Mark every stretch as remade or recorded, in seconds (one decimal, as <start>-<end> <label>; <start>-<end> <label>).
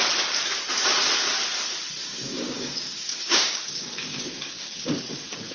0.0-2.1 recorded; 2.1-4.9 remade; 4.9-5.5 recorded